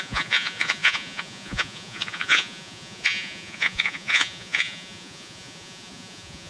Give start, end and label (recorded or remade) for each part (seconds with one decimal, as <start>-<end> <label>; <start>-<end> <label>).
0.0-6.5 remade

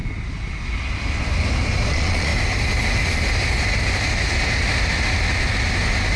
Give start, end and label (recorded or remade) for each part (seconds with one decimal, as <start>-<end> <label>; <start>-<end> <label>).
0.0-1.9 recorded; 1.9-2.3 remade; 2.3-6.2 recorded

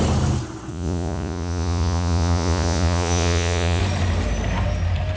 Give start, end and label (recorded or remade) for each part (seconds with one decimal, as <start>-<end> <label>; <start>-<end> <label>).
0.0-0.7 recorded; 0.7-3.8 remade; 3.8-5.2 recorded